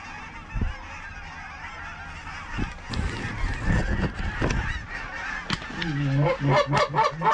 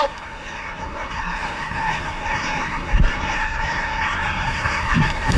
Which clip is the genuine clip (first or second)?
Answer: first